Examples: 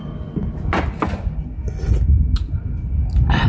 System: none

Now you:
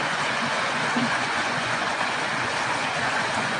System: vocoder, Vocos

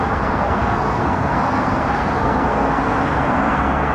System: codec, SNAC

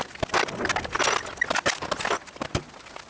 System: none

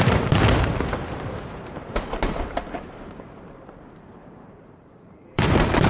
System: vocoder, BigVGAN v2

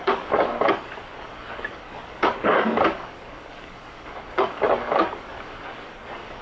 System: codec, DAC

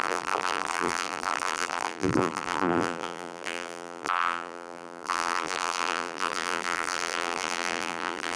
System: vocoder, BigVGAN v2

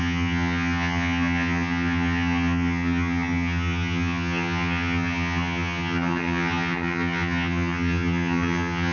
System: vocoder, HiFi-GAN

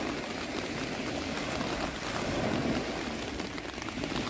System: none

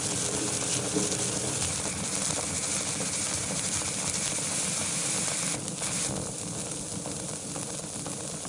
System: none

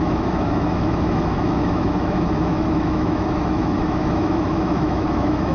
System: autoencoder, DAC-VAE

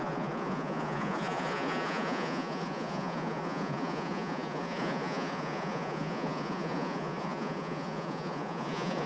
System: vocoder, Vocos